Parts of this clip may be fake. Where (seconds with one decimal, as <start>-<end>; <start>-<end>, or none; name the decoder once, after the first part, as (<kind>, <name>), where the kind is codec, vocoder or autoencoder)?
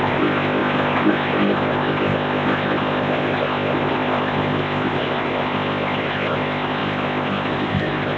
0.0-8.2 (codec, ZipCodec)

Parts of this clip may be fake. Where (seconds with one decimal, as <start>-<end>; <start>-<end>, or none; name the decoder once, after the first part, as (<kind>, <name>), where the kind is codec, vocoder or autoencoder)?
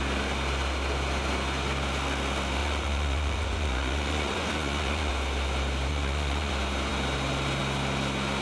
2.6-5.1 (vocoder, Vocos); 5.9-6.5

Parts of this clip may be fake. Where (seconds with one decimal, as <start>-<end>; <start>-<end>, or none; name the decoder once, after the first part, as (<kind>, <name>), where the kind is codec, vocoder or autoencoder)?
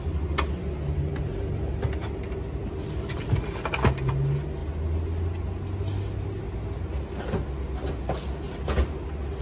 2.6-3.5 (vocoder, BigVGAN v2)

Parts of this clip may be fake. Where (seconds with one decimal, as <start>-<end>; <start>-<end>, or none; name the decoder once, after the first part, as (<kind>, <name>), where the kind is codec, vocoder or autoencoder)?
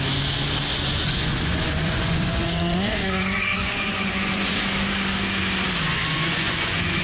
0.7-4.6 (vocoder, Vocos); 5.9-7.0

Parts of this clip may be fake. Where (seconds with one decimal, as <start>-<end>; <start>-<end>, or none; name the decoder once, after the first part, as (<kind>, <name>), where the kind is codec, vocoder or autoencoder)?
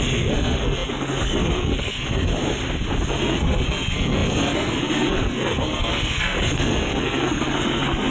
0.0-2.3 (codec, SNAC); 3.1-8.1